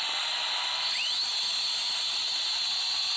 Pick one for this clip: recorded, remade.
recorded